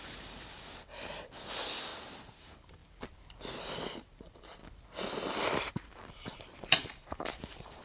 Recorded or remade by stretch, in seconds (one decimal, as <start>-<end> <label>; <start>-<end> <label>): 0.0-1.9 remade; 1.9-2.4 recorded; 2.4-2.8 remade; 2.8-3.6 recorded; 3.6-4.6 remade; 4.6-5.7 recorded; 5.7-7.8 remade

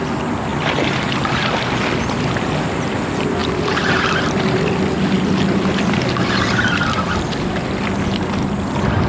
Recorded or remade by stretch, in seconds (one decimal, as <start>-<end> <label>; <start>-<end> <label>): 0.0-0.5 recorded; 0.5-1.1 remade; 1.1-3.4 recorded; 3.4-4.7 remade; 4.7-9.1 recorded

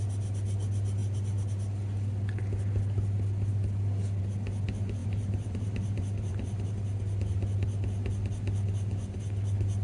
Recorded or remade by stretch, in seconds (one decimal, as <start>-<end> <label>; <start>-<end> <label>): 0.0-5.0 recorded; 5.0-6.7 remade; 6.7-9.8 recorded

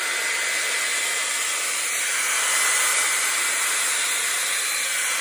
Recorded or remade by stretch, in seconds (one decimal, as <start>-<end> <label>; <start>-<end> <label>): 0.0-5.2 recorded

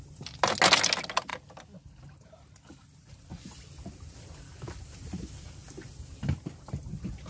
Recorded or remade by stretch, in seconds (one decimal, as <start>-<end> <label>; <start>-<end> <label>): 0.0-3.3 recorded; 3.3-4.1 remade; 4.1-7.3 recorded

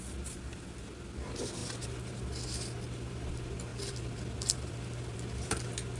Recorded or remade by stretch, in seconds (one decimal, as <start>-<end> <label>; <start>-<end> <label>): 0.0-3.7 recorded; 3.7-5.5 remade; 5.5-6.0 recorded

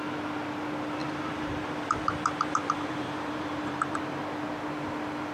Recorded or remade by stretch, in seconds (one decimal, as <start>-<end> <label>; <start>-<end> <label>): 0.0-1.0 recorded; 1.0-4.2 remade; 4.2-5.3 recorded

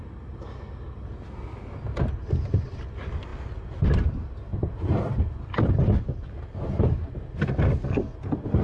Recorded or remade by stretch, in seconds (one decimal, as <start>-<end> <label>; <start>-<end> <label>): 0.0-4.5 recorded; 4.5-5.1 remade; 5.1-8.6 recorded